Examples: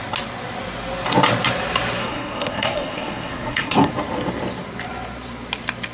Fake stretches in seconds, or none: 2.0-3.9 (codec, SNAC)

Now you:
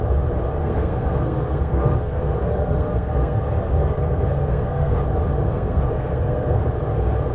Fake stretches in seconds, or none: 0.6-5.0 (codec, SNAC); 5.5-6.6